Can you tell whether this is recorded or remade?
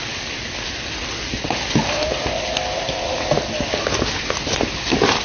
recorded